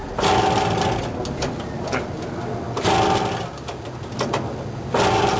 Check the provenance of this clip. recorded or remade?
recorded